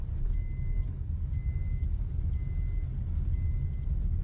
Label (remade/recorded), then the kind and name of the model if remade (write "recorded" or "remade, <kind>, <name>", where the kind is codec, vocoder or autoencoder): recorded